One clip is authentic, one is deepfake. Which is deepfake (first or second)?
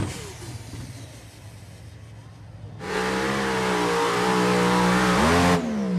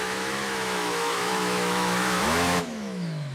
second